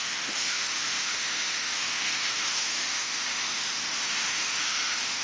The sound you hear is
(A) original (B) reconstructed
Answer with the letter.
B